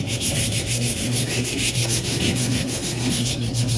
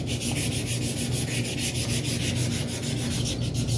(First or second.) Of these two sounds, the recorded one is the second